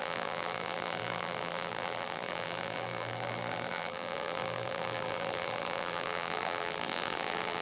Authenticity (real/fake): fake